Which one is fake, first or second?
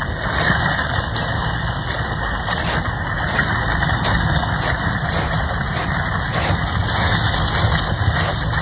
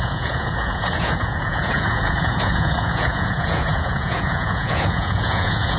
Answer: second